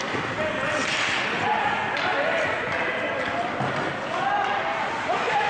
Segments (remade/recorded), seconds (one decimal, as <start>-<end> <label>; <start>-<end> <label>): 0.0-5.5 recorded